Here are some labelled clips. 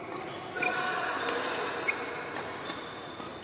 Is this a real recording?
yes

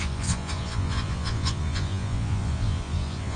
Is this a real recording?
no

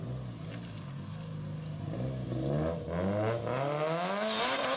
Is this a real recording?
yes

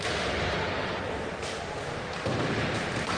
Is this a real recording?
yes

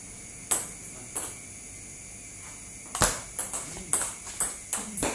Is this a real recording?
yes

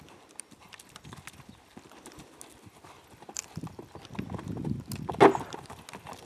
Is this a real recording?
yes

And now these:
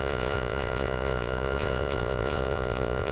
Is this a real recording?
no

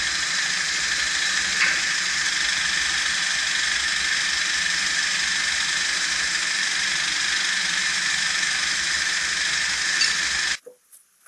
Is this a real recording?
yes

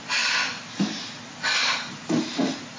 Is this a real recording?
yes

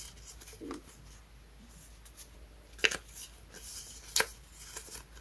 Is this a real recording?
yes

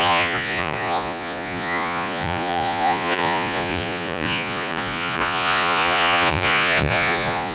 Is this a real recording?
no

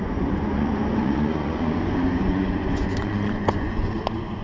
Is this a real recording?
no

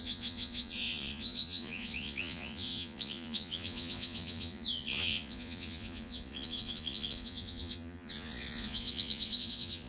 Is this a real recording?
no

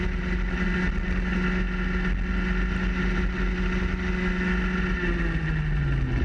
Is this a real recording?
yes